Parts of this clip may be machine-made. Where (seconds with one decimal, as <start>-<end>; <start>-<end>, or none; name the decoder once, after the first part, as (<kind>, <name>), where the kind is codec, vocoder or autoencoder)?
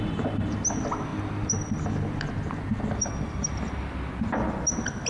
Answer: 1.1-3.1 (vocoder, BigVGAN v2)